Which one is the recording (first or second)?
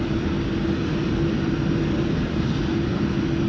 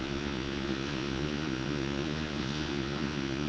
first